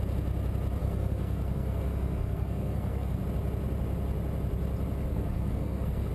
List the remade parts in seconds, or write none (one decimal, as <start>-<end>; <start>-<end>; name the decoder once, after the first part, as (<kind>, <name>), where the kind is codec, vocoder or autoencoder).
0.8-3.2 (codec, SNAC); 5.1-6.1